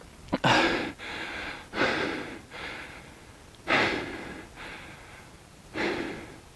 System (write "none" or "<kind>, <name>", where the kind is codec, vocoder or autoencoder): none